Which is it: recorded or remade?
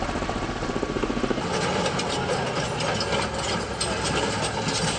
recorded